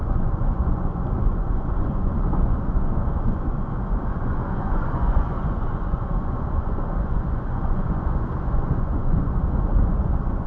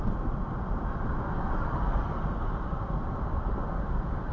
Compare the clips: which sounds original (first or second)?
second